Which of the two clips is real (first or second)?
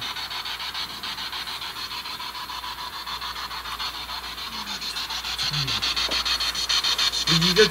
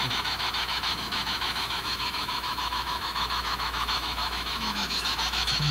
first